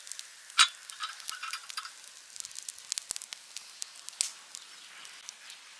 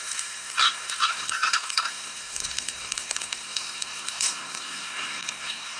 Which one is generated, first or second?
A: second